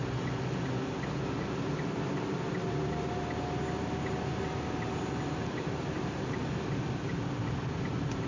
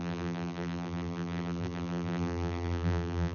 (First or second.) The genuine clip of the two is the first